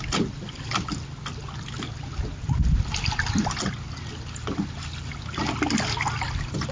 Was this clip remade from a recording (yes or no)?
no